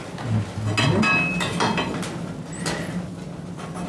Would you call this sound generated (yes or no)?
no